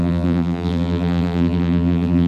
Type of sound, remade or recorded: remade